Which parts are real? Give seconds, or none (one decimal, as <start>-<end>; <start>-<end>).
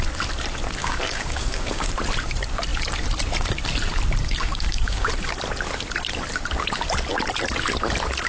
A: 0.0-0.8; 1.9-4.2; 5.1-8.3